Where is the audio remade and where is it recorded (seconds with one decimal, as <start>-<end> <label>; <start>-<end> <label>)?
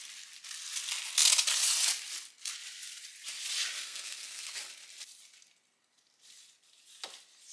0.0-3.8 recorded; 3.8-4.6 remade; 4.6-7.5 recorded